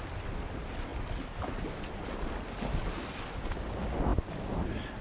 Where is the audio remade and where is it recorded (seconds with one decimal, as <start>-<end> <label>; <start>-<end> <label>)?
0.0-5.0 recorded